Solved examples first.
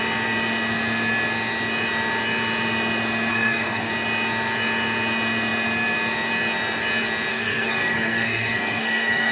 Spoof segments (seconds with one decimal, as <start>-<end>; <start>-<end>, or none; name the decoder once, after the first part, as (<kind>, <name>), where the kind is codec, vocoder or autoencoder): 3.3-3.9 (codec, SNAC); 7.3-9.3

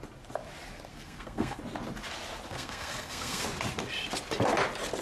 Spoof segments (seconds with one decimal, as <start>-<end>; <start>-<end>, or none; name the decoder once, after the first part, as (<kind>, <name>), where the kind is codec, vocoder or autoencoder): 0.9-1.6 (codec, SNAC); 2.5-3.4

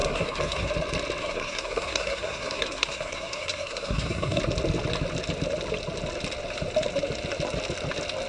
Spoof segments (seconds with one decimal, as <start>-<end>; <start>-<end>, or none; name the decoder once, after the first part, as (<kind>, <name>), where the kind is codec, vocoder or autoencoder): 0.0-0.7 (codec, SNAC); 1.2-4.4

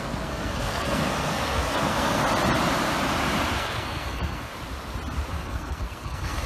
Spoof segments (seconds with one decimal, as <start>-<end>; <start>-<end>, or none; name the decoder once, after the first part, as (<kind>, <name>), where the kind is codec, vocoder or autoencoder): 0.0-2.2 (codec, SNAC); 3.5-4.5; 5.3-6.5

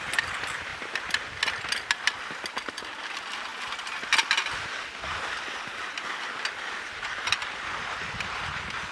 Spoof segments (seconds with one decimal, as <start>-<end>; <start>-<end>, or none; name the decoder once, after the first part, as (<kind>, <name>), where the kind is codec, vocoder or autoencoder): none

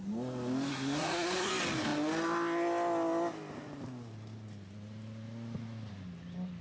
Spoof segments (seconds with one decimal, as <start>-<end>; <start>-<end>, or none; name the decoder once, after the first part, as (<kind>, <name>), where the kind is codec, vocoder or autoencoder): 0.7-1.5 (codec, SNAC)

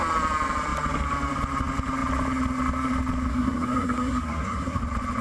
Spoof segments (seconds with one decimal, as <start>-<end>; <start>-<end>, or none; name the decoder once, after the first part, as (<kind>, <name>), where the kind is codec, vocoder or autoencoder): 3.3-4.8 (codec, SNAC)